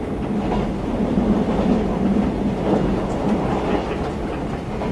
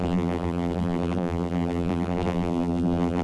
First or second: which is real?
first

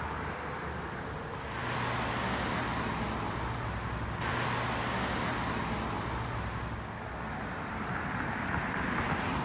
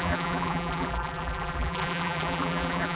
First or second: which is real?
first